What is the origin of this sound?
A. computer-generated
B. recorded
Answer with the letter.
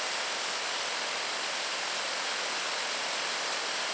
A